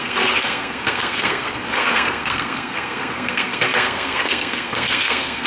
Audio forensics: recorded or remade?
remade